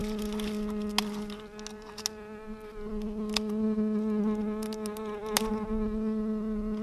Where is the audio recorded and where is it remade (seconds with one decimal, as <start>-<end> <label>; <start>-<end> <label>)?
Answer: 0.0-6.8 recorded